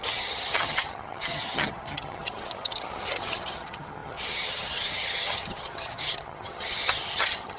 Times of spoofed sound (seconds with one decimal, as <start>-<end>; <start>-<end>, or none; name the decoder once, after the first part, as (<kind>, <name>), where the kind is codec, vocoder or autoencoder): 0.0-7.6 (vocoder, HiFi-GAN)